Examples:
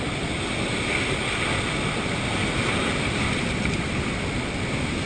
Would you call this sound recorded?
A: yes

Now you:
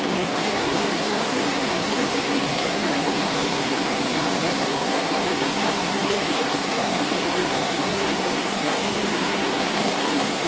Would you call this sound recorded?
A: no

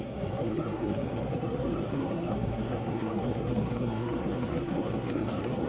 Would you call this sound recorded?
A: no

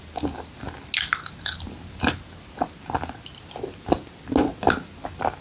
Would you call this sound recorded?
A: yes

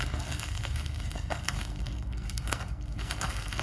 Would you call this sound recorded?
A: no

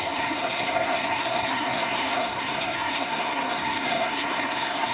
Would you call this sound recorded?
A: no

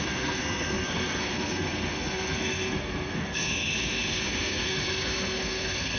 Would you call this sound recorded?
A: no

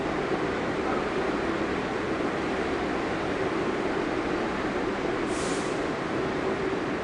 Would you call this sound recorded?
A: yes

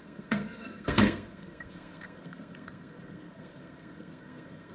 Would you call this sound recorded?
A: no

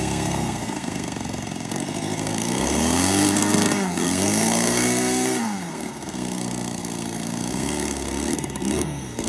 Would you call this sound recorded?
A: no